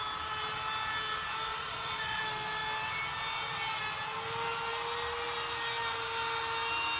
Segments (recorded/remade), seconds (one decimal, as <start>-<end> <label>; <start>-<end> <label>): 0.0-1.5 recorded; 1.5-2.2 remade; 2.2-7.0 recorded